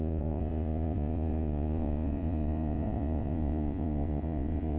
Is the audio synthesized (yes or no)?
yes